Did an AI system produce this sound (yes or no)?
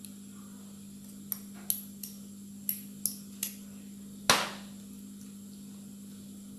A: no